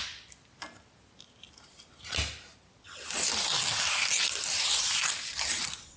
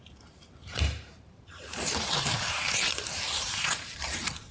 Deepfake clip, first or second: second